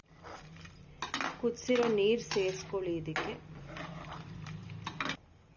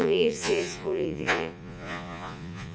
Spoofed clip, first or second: second